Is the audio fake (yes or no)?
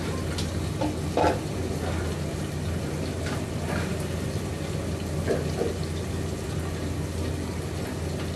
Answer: no